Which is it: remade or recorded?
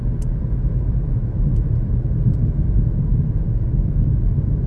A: recorded